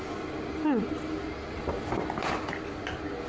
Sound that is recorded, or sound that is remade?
recorded